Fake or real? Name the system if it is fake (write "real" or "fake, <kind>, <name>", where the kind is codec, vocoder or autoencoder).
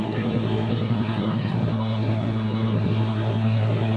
fake, codec, SNAC